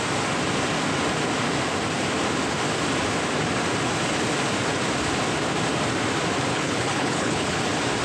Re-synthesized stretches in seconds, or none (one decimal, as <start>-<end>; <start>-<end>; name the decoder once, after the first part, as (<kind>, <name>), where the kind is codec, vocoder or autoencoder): 6.5-7.6 (codec, HILCodec)